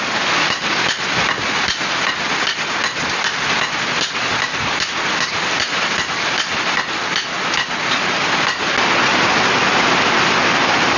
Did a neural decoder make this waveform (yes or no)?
no